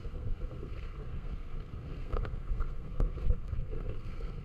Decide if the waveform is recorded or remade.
remade